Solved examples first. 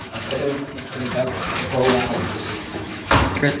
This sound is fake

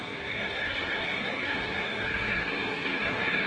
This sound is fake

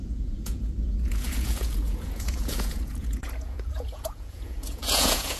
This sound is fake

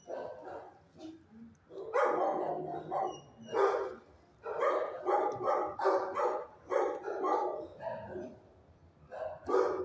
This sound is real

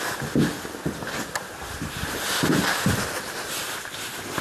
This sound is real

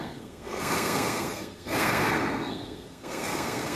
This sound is fake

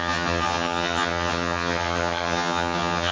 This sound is fake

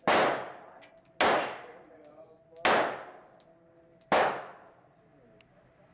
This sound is real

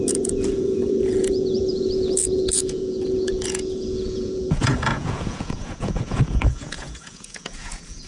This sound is fake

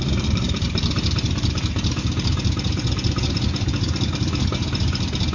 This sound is fake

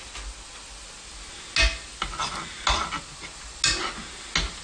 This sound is real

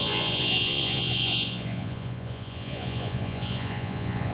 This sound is fake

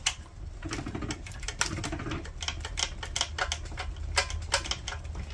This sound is real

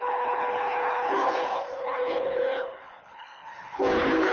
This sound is fake